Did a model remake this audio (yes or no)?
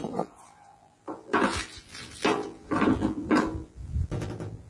yes